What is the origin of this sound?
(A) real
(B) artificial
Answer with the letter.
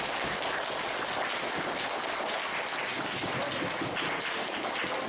A